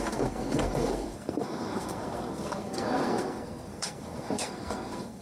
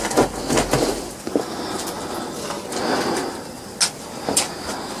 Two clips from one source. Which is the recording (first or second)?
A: second